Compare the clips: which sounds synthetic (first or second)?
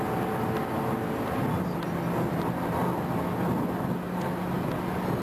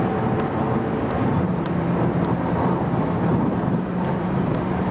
second